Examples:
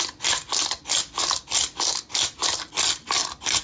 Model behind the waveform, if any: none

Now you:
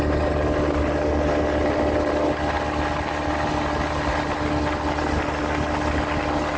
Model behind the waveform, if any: none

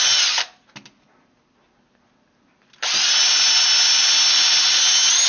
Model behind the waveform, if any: none